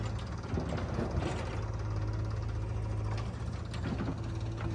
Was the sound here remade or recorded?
recorded